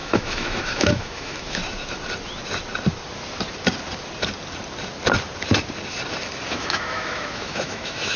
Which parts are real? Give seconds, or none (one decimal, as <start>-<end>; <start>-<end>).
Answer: 1.6-6.5